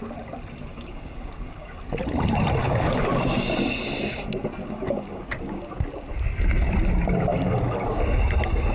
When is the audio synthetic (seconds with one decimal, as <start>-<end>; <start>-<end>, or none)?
0.7-1.8; 2.6-3.2; 4.6-5.6; 7.3-8.0

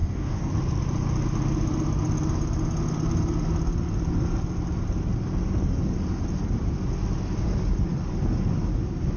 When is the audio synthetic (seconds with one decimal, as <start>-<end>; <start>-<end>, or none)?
0.0-0.5

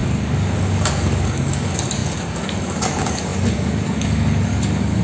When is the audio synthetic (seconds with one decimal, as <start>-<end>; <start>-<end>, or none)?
0.0-5.0

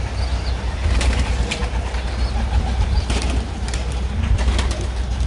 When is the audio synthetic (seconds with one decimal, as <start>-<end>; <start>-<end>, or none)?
none

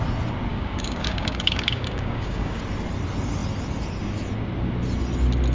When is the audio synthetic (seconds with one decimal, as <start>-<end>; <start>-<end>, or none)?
0.5-2.6

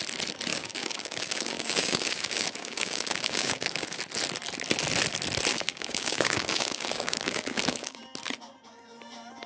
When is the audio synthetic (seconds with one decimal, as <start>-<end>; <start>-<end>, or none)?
0.5-4.0; 5.5-8.0

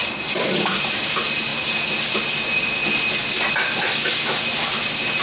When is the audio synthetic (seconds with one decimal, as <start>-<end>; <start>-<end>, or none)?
0.0-0.7